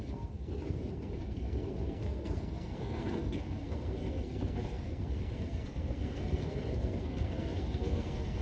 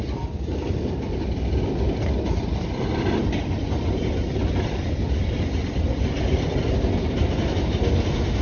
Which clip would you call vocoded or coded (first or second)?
first